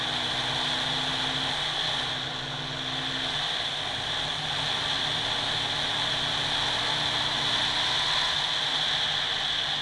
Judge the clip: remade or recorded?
recorded